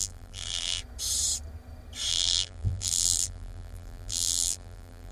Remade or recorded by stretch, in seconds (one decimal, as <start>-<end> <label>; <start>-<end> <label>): 0.0-0.8 remade; 0.8-2.1 recorded; 2.1-5.1 remade